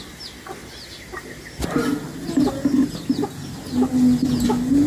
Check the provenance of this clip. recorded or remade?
recorded